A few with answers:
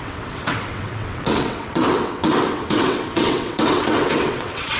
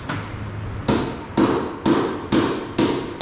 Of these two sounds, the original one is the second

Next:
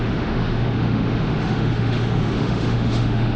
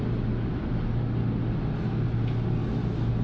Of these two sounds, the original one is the second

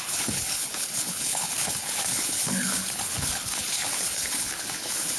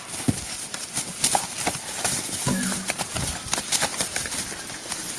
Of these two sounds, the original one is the second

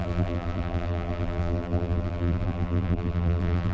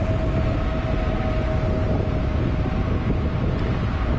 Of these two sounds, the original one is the second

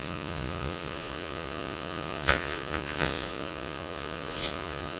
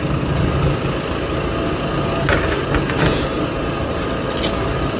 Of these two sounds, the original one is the second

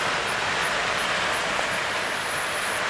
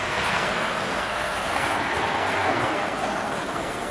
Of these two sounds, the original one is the first